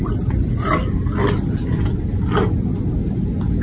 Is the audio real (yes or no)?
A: yes